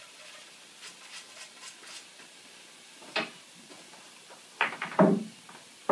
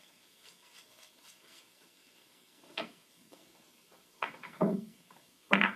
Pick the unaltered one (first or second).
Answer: first